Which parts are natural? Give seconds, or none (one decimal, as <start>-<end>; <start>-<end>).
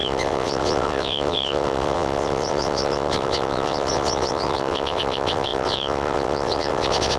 none